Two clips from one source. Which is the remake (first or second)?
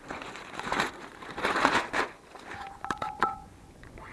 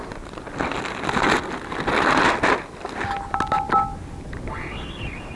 first